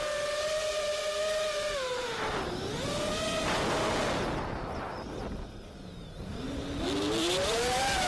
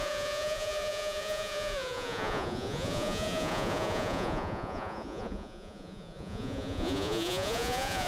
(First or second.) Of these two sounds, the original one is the first